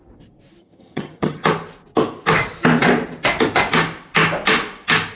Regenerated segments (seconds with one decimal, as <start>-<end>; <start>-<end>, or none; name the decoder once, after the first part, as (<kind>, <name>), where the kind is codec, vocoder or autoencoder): 0.6-1.4 (vocoder, HiFi-GAN)

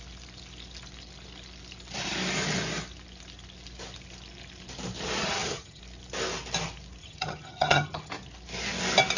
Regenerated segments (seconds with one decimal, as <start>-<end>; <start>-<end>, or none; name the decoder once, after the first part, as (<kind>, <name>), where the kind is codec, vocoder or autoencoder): 5.2-5.8 (vocoder, HiFi-GAN); 7.0-8.1

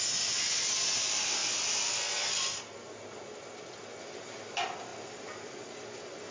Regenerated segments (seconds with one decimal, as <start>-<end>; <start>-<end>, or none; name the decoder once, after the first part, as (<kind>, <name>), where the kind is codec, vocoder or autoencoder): none

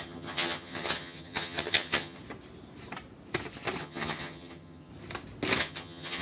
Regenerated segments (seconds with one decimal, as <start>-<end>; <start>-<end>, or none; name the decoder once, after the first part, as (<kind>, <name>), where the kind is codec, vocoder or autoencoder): 0.0-2.2 (vocoder, HiFi-GAN); 3.8-4.9; 5.6-6.2

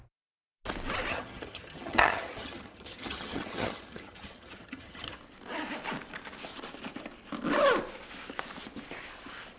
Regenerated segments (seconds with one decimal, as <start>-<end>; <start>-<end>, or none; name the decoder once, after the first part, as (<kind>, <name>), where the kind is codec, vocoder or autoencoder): 1.1-5.2 (vocoder, HiFi-GAN)